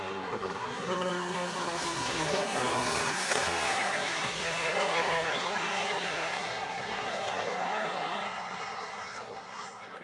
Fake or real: fake